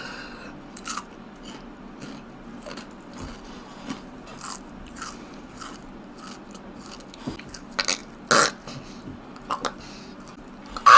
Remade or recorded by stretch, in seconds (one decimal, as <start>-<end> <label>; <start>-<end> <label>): 0.0-11.0 recorded